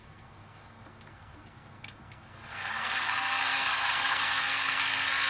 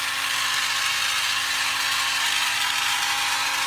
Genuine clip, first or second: second